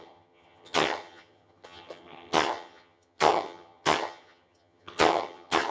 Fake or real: fake